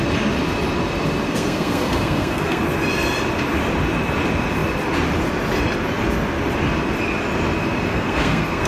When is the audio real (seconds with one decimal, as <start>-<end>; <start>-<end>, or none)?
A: 0.0-1.3; 2.6-7.9